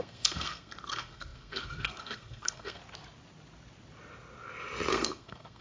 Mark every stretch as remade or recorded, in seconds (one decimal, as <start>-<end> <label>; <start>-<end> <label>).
0.0-2.8 remade; 2.8-4.9 recorded; 4.9-5.6 remade